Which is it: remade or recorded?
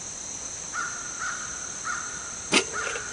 recorded